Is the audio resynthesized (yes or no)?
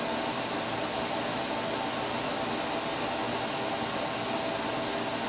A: no